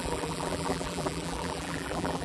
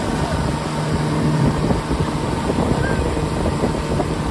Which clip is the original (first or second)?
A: second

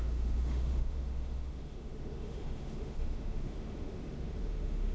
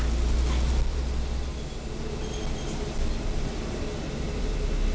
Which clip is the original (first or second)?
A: second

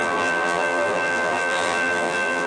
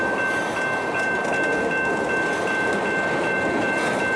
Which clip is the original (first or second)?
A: second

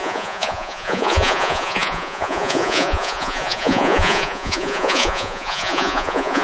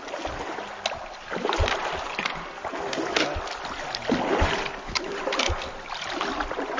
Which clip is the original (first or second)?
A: second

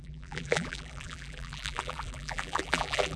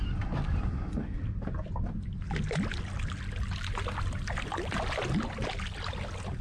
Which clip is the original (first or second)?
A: second